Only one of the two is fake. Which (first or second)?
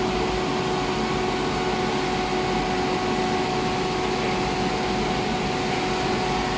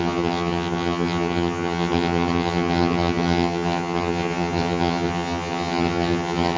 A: second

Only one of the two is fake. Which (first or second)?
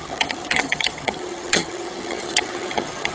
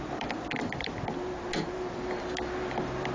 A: first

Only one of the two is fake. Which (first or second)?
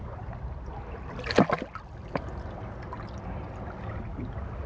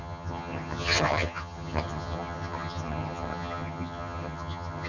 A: second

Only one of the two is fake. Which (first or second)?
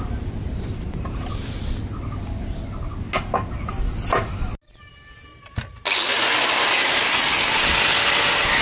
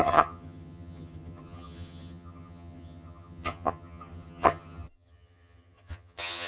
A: second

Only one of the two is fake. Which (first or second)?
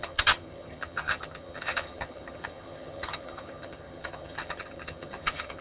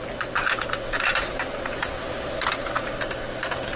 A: first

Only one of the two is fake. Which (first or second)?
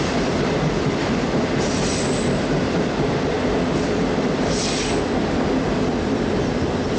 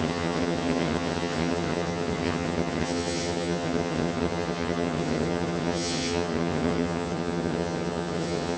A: second